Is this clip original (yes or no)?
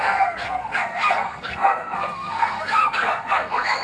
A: no